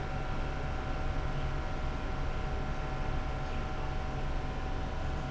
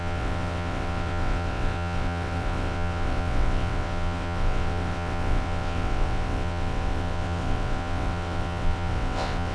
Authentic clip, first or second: first